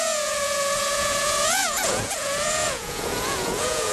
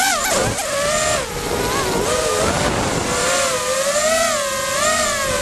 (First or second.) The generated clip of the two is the first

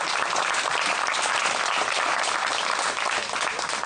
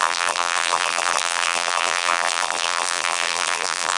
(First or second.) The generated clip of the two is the second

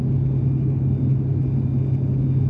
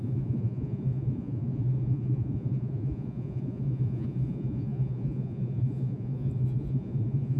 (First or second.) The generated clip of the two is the second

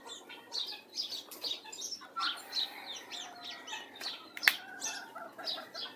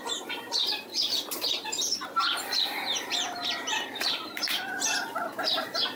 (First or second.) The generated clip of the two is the second